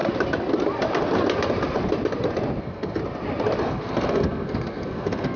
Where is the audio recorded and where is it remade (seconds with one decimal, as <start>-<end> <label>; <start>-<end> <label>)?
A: 0.0-2.6 recorded; 2.6-3.0 remade; 3.0-3.6 recorded; 3.6-5.4 remade